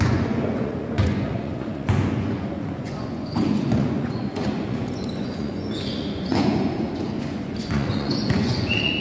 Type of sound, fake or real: fake